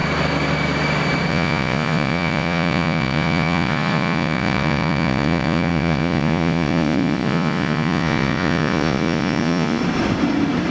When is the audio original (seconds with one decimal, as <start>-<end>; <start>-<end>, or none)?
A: 0.0-1.3; 9.8-10.7